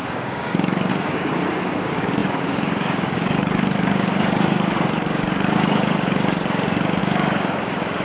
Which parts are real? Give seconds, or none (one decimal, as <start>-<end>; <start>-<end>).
none

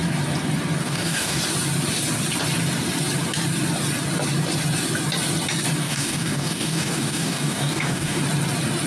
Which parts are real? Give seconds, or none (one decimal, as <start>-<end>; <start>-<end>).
0.0-0.8; 1.4-5.8; 8.2-8.9